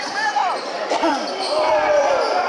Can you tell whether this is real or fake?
fake